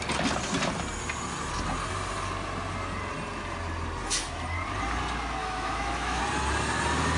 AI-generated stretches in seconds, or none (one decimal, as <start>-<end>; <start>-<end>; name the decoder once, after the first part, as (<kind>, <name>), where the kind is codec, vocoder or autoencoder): 5.4-6.2 (autoencoder, DAC-VAE)